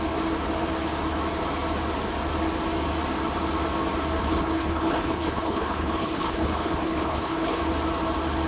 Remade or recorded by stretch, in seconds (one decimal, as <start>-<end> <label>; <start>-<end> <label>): 0.0-4.2 recorded; 4.2-7.6 remade; 7.6-8.5 recorded